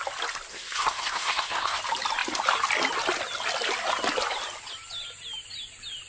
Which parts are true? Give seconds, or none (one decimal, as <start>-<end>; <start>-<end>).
0.0-0.5; 1.8-6.1